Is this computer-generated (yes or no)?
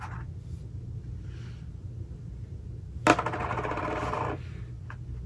no